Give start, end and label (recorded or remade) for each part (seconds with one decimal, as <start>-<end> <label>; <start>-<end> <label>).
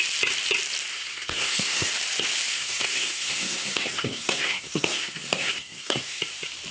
0.0-0.9 recorded; 0.9-1.9 remade; 1.9-2.5 recorded; 2.5-6.2 remade; 6.2-6.7 recorded